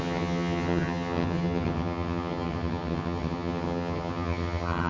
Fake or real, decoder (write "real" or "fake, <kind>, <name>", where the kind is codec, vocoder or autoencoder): fake, vocoder, HiFi-GAN